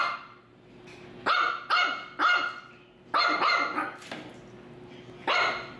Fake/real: real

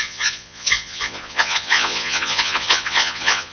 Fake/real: fake